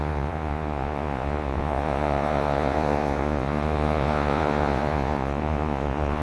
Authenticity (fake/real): fake